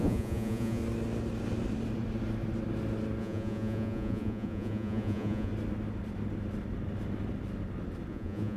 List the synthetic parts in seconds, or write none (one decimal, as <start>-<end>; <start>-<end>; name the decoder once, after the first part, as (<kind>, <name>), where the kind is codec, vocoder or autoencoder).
0.0-0.8 (vocoder, Vocos); 3.2-5.5; 8.1-8.6